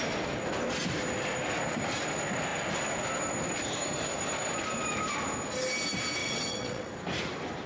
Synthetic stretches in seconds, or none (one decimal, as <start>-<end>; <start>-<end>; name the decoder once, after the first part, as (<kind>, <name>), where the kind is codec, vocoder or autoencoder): 6.2-6.9 (vocoder, WaveNeXt)